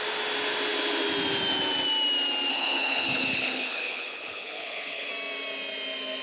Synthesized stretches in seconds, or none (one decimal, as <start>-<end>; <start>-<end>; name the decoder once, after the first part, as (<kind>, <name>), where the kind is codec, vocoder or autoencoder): 2.5-5.1 (codec, HILCodec)